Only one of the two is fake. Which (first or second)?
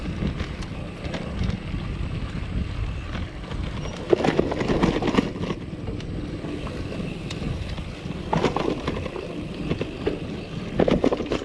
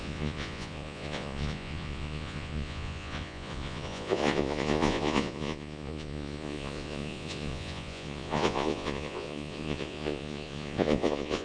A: second